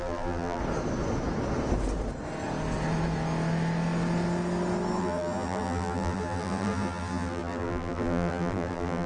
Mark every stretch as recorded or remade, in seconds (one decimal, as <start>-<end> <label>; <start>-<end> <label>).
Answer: 0.0-0.6 remade; 0.6-5.0 recorded; 5.0-9.1 remade